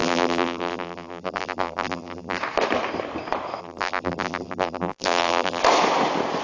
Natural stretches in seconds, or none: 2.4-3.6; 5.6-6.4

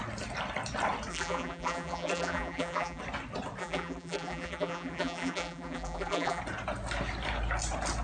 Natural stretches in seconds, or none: 0.0-1.1; 3.0-3.6; 6.4-8.0